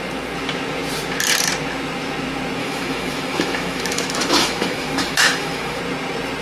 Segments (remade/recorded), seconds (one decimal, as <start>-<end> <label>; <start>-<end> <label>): 0.0-2.6 recorded; 2.6-5.8 remade; 5.8-6.4 recorded